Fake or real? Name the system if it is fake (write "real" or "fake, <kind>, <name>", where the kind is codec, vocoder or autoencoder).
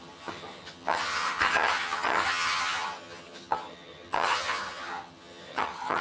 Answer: fake, vocoder, HiFi-GAN